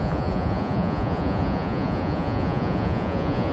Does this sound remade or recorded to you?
remade